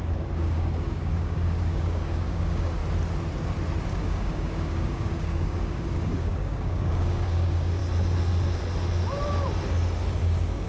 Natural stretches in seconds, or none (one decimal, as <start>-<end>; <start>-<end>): 2.8-3.9; 7.8-10.2